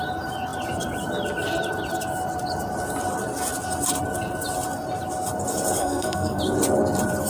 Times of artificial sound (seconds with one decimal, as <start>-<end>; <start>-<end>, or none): 5.8-6.4